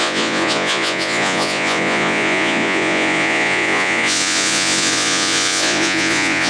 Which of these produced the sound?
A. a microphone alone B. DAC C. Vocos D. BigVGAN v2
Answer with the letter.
C